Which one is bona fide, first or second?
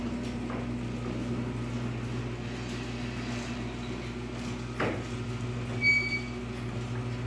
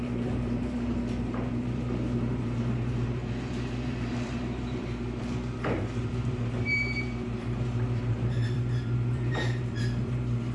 first